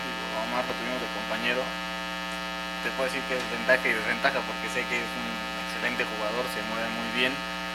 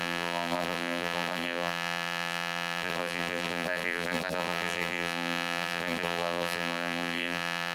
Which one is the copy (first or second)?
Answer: second